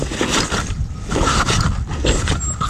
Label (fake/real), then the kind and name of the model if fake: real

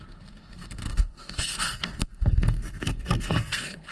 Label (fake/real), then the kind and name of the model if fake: fake, codec, SNAC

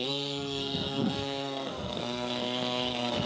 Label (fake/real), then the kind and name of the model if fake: fake, codec, SNAC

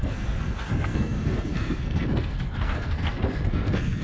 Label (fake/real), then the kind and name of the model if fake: fake, codec, SNAC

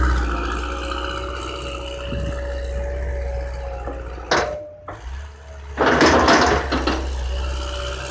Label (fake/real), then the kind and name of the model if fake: real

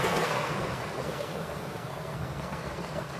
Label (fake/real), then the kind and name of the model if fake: fake, codec, SNAC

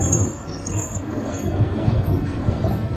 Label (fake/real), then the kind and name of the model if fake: fake, codec, SNAC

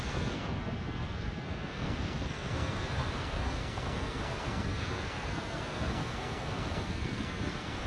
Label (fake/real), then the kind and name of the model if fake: fake, codec, SNAC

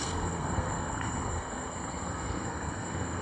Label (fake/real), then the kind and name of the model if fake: fake, codec, SNAC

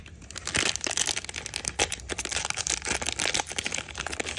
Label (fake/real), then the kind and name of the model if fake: real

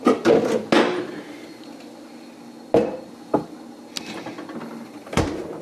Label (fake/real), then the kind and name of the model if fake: real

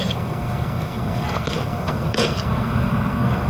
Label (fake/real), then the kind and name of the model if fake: fake, codec, SNAC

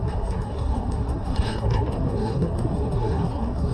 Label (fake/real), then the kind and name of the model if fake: fake, codec, SNAC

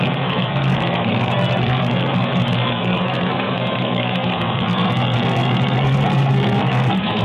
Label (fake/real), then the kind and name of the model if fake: fake, codec, SNAC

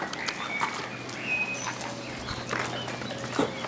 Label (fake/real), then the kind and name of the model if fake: real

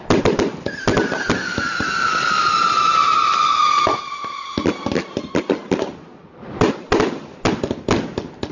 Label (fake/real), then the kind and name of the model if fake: real